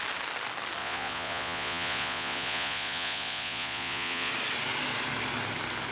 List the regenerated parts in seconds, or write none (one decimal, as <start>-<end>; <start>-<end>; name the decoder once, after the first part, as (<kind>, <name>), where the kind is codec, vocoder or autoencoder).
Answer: 0.8-4.3 (vocoder, Vocos)